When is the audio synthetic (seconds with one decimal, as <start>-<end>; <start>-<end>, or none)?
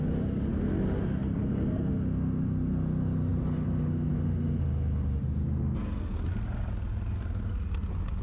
none